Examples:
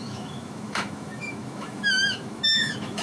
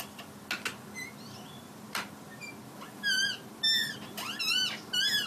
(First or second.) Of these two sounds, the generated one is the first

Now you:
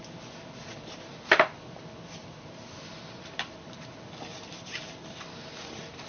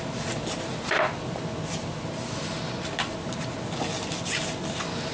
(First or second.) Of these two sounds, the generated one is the first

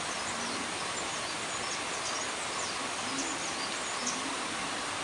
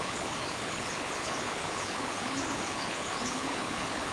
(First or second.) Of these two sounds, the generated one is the second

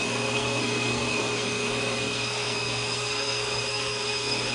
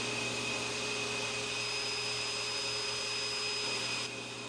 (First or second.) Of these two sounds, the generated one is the first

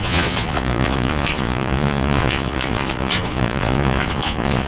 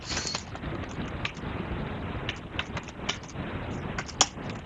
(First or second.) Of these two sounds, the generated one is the first